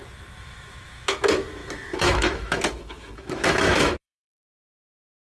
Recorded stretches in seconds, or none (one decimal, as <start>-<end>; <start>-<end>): none